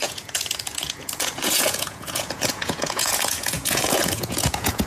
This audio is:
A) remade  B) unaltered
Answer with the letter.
A